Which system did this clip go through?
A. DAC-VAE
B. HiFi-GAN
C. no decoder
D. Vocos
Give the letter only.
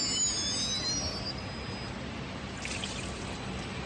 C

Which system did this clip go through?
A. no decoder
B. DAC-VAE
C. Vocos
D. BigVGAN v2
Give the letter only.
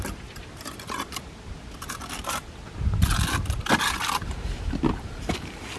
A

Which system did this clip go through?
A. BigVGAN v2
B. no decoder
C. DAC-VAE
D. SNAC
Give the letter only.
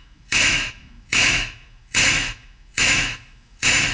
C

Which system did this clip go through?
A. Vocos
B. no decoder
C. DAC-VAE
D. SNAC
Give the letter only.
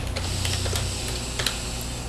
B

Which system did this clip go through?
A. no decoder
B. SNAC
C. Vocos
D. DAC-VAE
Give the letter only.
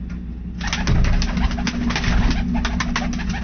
A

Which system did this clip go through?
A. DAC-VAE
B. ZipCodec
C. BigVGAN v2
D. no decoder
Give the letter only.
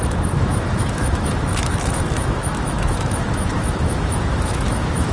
A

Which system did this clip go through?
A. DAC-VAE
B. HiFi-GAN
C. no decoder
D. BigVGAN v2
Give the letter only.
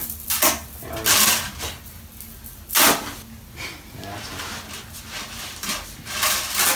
C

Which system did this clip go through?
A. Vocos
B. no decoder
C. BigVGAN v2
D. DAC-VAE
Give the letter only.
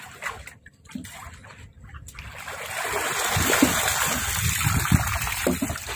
B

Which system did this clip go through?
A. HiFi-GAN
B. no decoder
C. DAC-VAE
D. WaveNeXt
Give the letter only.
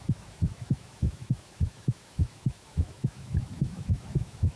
C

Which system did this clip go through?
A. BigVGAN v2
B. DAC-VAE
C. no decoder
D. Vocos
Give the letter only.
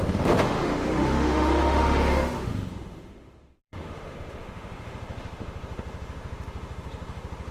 B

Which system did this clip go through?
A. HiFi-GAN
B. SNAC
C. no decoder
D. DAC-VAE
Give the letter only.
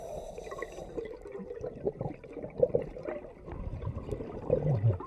C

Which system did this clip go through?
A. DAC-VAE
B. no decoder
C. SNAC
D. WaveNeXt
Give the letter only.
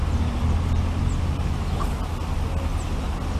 B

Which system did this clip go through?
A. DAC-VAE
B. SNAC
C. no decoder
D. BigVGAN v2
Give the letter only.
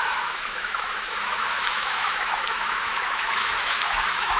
A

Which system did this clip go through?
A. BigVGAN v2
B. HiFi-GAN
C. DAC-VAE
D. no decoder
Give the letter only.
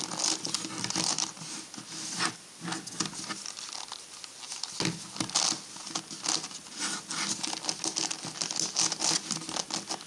D